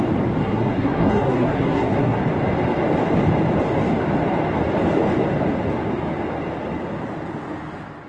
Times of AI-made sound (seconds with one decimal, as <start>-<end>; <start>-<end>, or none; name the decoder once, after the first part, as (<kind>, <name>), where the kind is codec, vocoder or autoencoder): 0.4-2.2 (codec, SNAC)